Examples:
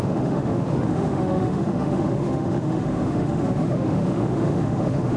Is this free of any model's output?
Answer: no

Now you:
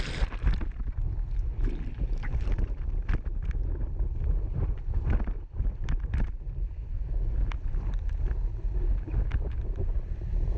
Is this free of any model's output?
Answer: yes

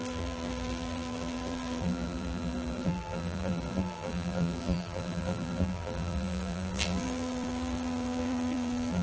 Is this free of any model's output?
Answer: no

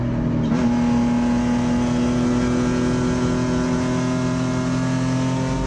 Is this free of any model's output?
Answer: yes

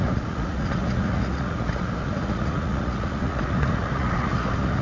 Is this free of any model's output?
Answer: no